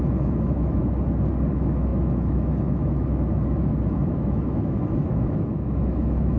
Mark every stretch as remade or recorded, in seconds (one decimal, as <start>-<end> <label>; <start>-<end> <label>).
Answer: 0.0-0.8 remade; 0.8-1.5 recorded; 1.5-6.4 remade